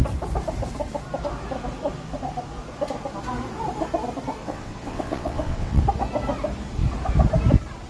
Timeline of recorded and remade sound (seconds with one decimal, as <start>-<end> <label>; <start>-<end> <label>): 0.0-4.4 recorded; 4.4-5.8 remade; 5.8-7.9 recorded